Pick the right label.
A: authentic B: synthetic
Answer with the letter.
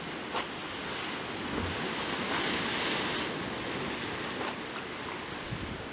A